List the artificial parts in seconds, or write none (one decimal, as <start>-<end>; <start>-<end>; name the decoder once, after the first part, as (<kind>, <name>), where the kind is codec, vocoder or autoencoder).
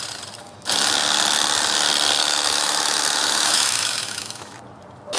2.2-4.6 (autoencoder, DAC-VAE)